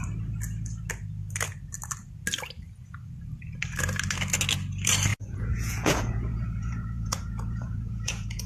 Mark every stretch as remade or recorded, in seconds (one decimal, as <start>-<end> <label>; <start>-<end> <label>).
0.0-5.1 recorded; 5.1-8.5 remade